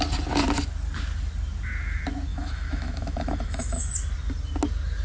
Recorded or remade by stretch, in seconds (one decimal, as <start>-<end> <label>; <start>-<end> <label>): 0.0-2.3 recorded; 2.3-3.9 remade; 3.9-5.0 recorded